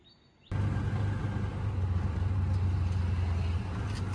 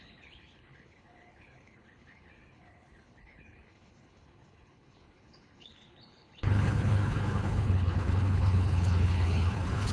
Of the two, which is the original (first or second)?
first